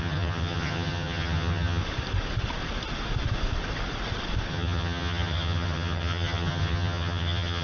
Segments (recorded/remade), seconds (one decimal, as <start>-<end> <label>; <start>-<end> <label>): 0.0-1.8 remade; 1.8-4.5 recorded; 4.5-7.6 remade